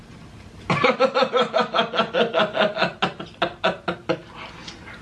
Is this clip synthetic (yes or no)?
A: no